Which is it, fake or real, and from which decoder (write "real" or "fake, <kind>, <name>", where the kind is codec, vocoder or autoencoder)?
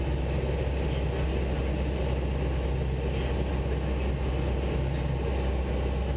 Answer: real